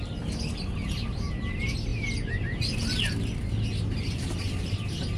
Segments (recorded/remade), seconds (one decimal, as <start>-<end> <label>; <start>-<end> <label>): 0.0-5.2 recorded